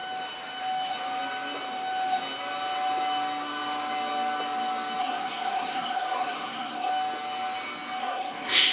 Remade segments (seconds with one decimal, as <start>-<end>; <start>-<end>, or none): 5.0-6.9; 8.0-8.7